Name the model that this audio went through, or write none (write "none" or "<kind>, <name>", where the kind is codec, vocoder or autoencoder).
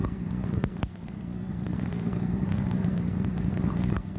codec, SNAC